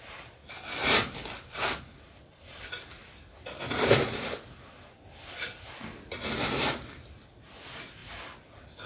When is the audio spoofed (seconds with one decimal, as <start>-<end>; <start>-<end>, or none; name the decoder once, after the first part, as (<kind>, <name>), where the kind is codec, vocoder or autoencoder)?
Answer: none